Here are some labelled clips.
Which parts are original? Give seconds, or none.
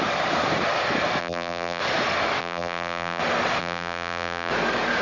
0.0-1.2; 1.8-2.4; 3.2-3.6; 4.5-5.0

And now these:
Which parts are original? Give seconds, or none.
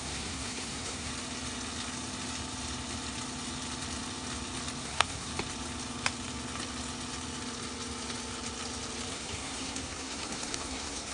1.1-4.8; 5.3-9.1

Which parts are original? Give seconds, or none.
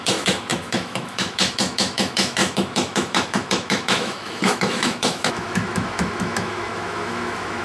none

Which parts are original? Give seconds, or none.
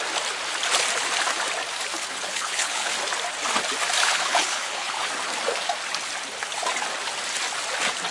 0.0-1.9; 2.9-4.0; 5.1-8.1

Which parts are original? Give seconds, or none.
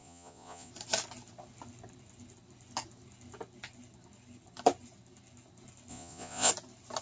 0.7-5.9; 6.5-7.0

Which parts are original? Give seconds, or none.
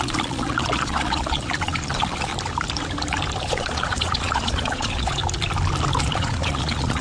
2.3-3.4; 5.2-6.0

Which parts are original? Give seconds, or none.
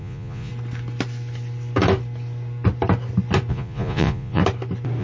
0.5-3.5; 4.4-5.0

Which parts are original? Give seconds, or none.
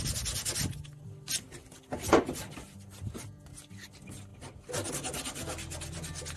0.0-6.4